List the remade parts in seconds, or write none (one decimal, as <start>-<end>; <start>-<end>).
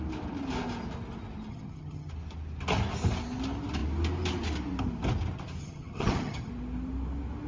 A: 1.5-2.1; 5.6-6.5